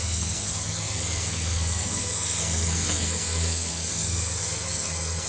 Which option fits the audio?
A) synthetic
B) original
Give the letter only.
A